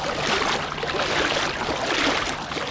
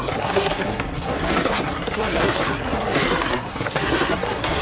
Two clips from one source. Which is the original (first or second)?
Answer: first